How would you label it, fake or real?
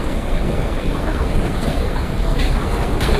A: fake